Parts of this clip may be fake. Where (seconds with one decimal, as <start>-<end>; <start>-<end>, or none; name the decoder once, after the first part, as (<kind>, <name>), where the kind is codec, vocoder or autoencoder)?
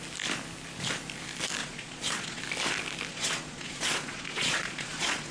1.6-2.4 (vocoder, Vocos); 3.1-5.3